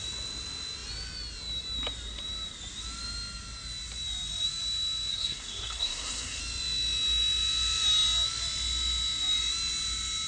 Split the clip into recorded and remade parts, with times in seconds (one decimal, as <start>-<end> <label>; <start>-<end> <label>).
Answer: 0.0-5.1 recorded; 5.1-6.4 remade; 6.4-10.3 recorded